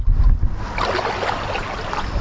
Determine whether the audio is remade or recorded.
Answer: recorded